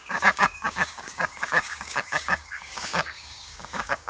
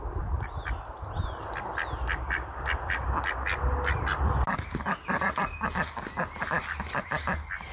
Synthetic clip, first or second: first